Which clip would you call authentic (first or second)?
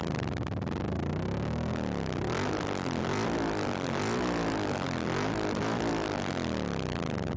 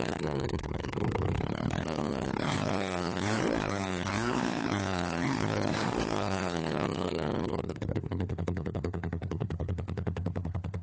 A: first